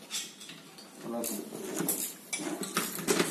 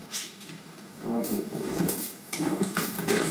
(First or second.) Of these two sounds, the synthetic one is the second